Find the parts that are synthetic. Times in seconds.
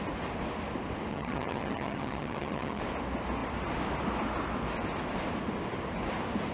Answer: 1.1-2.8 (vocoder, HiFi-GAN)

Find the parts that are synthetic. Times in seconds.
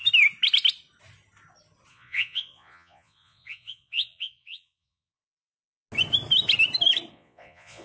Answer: 1.9-5.1 (vocoder, Vocos); 7.1-7.8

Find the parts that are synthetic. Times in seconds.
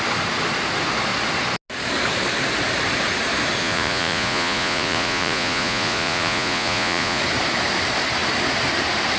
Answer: 3.6-7.2 (vocoder, Vocos)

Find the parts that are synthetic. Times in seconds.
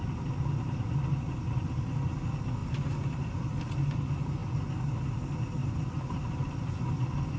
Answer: 5.6-6.2 (vocoder, BigVGAN v2)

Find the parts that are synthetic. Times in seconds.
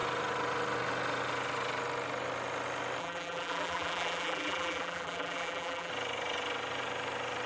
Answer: 3.0-5.9 (vocoder, BigVGAN v2)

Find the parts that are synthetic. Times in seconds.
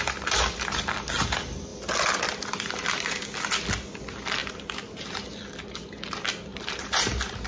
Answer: 4.4-5.1 (vocoder, BigVGAN v2); 6.5-7.5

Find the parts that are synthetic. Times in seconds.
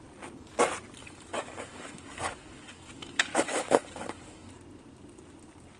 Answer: 1.0-4.5 (codec, DAC)